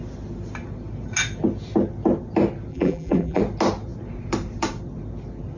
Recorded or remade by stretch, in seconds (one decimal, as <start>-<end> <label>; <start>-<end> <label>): 0.0-2.7 recorded; 2.7-3.4 remade; 3.4-5.6 recorded